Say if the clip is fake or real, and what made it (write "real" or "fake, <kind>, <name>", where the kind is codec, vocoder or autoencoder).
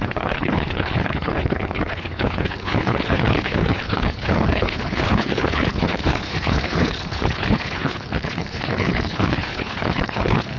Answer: fake, codec, HILCodec